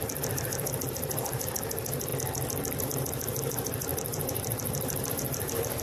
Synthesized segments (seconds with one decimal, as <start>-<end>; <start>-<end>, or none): 0.0-2.1; 2.8-5.8